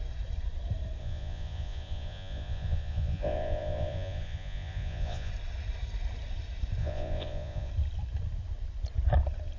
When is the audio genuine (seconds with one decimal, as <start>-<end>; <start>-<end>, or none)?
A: 0.0-1.0; 5.3-6.8; 7.7-9.6